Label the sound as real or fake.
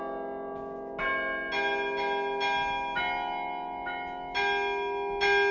real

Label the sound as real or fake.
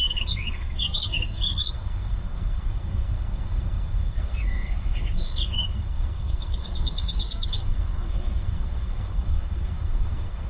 fake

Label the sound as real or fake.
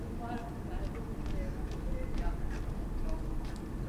real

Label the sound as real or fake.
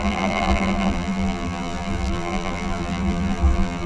fake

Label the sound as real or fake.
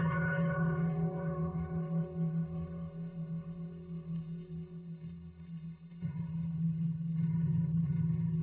fake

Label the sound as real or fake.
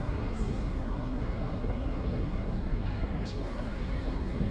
fake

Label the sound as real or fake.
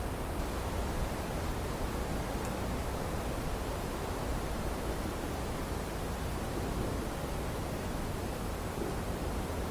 real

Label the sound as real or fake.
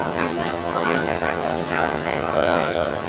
fake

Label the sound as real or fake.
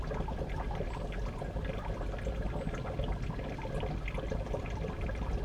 real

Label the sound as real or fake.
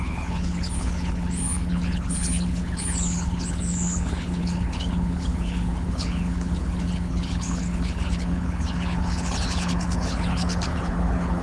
fake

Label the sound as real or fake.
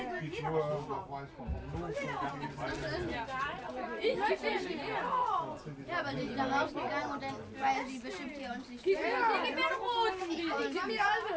real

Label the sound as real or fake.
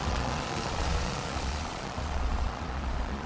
fake